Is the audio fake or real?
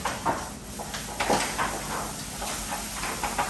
real